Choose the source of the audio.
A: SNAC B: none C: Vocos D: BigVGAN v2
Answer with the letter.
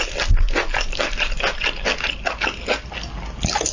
B